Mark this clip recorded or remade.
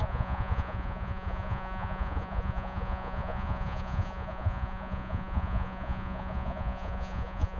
remade